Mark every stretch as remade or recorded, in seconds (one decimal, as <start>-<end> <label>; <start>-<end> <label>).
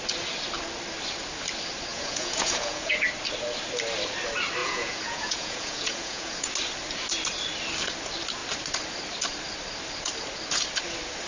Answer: 0.0-1.9 recorded; 1.9-2.9 remade; 2.9-4.6 recorded; 4.6-6.5 remade; 6.5-11.3 recorded